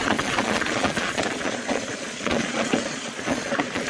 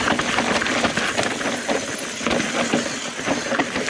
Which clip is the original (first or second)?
second